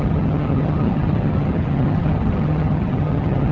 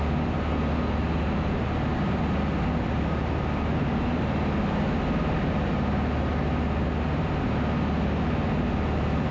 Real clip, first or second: second